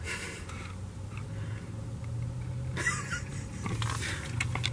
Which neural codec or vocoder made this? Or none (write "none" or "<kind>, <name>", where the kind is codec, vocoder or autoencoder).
none